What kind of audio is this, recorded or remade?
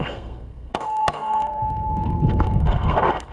remade